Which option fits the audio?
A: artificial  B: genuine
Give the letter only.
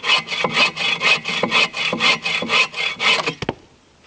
B